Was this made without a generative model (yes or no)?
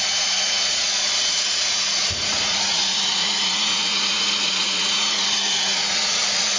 no